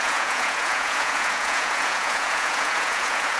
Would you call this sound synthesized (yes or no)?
yes